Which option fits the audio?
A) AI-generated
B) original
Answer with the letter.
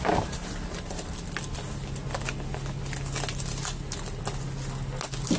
B